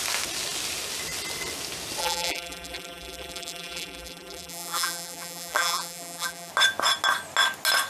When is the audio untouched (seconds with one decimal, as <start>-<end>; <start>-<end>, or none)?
0.0-2.0; 6.5-7.9